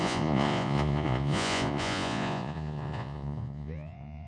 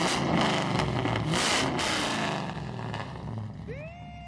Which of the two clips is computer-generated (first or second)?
first